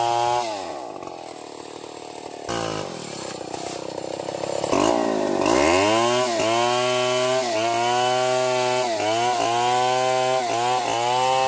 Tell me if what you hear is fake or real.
real